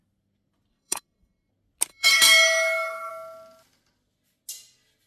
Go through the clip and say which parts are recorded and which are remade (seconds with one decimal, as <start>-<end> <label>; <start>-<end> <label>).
0.0-0.7 recorded; 0.7-1.5 remade; 1.5-1.9 recorded; 1.9-3.1 remade; 3.1-5.1 recorded